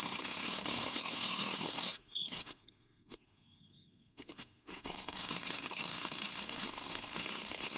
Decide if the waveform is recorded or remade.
remade